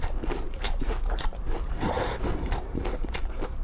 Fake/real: fake